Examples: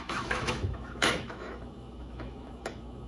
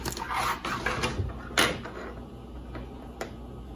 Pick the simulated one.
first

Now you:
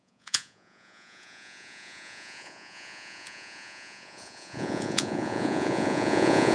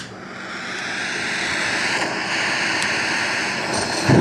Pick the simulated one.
first